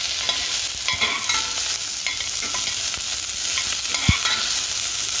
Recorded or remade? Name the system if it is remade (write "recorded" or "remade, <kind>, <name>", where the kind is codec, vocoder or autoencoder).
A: recorded